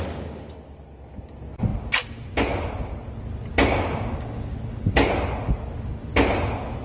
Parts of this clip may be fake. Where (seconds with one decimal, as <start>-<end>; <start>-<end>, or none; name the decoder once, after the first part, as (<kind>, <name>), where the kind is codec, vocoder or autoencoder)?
3.5-5.1 (codec, DAC)